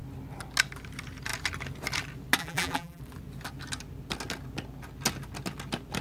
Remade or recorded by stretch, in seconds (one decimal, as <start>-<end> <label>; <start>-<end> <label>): 0.0-2.4 recorded; 2.4-3.0 remade; 3.0-6.0 recorded